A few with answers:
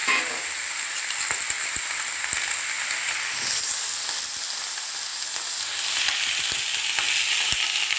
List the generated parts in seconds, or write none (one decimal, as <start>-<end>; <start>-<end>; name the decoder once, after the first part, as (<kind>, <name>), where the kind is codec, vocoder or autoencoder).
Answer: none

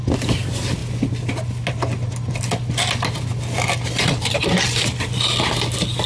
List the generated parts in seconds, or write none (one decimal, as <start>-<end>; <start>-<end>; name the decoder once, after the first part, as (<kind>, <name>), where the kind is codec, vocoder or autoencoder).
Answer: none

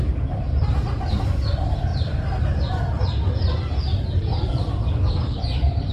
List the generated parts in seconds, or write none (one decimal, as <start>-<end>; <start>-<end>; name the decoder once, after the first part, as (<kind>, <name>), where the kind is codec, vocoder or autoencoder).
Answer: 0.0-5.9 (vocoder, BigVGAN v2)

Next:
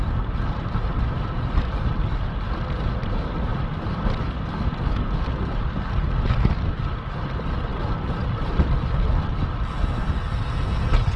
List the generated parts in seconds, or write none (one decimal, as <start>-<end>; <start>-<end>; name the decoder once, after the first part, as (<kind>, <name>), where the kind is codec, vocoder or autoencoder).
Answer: 3.5-4.7 (vocoder, BigVGAN v2); 7.7-8.9

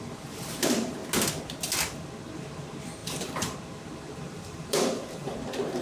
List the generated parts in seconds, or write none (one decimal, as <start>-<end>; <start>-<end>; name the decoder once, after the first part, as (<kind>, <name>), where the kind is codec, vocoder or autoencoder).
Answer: 0.0-1.0 (vocoder, BigVGAN v2); 2.3-5.8